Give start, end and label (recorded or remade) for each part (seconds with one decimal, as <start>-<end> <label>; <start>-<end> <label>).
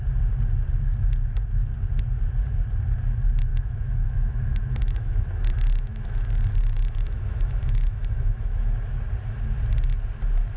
0.0-3.5 recorded; 3.5-8.7 remade; 8.7-10.6 recorded